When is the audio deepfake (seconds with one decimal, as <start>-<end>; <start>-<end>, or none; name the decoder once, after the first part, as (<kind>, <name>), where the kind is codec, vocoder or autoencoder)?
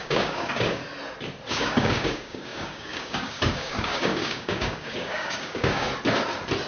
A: 0.0-0.8 (codec, DAC); 1.5-5.9